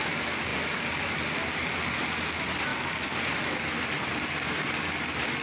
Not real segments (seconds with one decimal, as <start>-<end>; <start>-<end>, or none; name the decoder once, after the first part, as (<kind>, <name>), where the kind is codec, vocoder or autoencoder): none